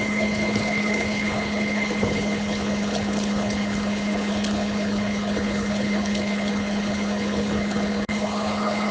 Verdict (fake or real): fake